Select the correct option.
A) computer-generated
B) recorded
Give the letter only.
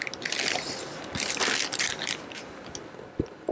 B